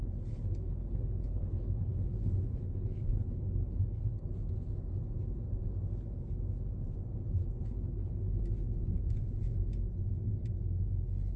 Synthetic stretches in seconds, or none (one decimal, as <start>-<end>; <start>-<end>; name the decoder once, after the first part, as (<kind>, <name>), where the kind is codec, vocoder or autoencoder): 0.0-4.2 (codec, HILCodec); 7.6-8.4